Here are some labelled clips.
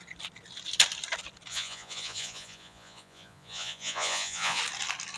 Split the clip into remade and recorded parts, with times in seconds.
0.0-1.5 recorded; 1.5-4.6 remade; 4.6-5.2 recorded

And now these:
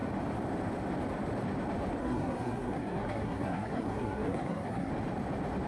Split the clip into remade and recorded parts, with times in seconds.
0.0-2.0 recorded; 2.0-4.9 remade; 4.9-5.7 recorded